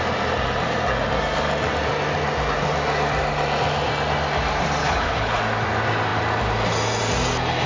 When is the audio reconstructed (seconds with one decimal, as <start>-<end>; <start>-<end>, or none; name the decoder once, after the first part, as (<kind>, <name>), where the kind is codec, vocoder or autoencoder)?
4.8-5.4 (codec, HILCodec)